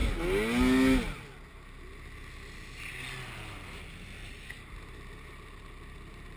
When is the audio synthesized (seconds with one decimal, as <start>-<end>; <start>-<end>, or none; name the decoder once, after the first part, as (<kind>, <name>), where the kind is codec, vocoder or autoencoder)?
none

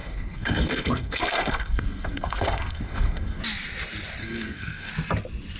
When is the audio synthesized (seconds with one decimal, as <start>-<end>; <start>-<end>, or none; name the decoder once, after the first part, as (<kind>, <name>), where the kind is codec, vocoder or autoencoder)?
0.0-3.4 (codec, SNAC); 4.2-4.9